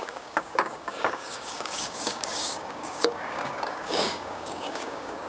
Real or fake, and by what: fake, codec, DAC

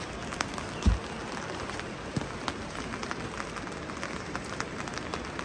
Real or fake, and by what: real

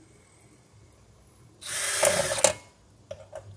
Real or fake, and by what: real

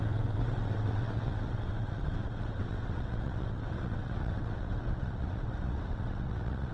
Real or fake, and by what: fake, vocoder, WaveNeXt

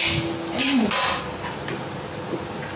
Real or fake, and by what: real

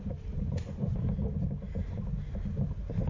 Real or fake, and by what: real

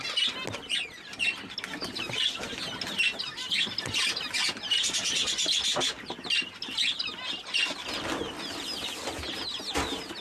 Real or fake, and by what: real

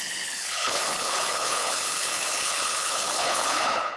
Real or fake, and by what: fake, codec, HILCodec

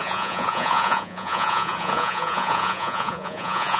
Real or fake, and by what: fake, vocoder, Vocos